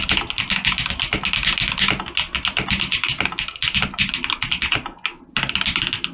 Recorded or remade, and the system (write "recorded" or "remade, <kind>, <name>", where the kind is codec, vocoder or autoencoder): recorded